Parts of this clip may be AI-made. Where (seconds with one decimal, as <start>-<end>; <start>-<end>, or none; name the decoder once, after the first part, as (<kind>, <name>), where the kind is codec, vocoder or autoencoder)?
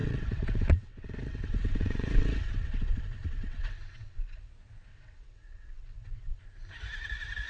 0.0-4.5 (vocoder, WaveNeXt); 4.9-6.4